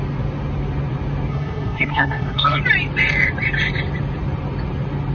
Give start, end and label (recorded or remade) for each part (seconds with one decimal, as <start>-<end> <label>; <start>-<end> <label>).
0.0-1.3 recorded; 1.3-2.6 remade; 2.6-5.1 recorded